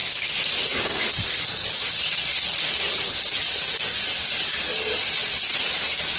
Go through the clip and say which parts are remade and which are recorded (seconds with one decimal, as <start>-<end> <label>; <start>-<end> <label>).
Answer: 0.0-3.9 recorded; 3.9-5.0 remade; 5.0-6.2 recorded